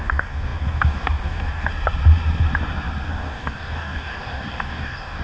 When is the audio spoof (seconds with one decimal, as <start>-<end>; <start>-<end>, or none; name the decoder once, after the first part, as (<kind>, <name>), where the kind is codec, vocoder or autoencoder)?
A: 0.0-1.7 (codec, DAC); 3.1-5.2